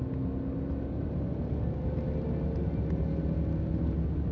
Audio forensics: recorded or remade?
recorded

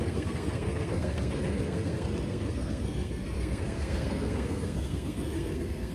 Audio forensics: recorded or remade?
remade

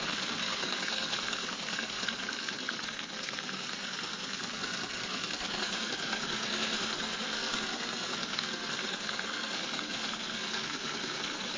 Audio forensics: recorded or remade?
remade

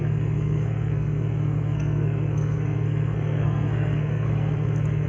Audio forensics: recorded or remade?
remade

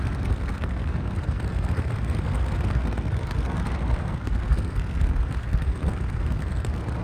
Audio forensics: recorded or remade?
remade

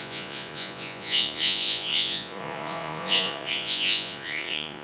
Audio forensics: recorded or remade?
remade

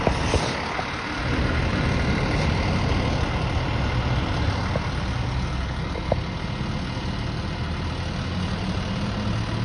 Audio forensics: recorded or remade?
recorded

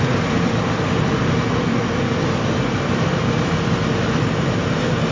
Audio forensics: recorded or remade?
recorded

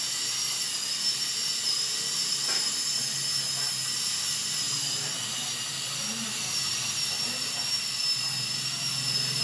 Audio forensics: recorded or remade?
recorded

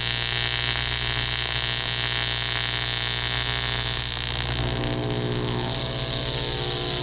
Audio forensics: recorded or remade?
recorded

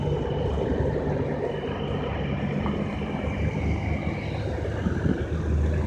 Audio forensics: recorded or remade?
recorded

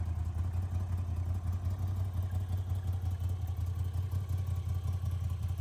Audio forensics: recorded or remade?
recorded